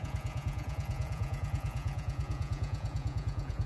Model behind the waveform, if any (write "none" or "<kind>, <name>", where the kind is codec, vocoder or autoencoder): vocoder, Vocos